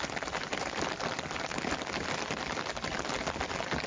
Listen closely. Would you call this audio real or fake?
real